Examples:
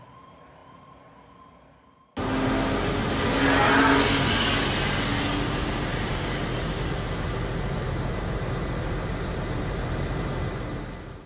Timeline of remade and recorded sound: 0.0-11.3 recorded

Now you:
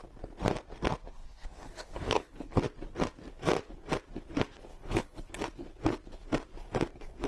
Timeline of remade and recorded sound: 0.0-1.2 recorded; 1.2-2.6 remade; 2.6-4.7 recorded; 4.7-5.3 remade; 5.3-7.3 recorded

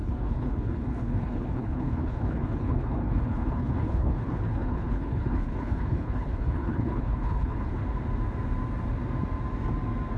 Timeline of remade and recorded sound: 0.0-7.8 remade; 7.8-10.2 recorded